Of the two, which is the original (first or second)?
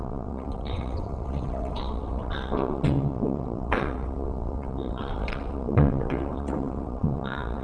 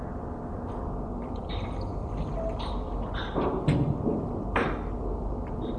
second